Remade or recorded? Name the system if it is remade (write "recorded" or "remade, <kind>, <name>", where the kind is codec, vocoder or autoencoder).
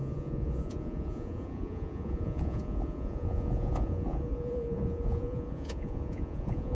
remade, vocoder, Vocos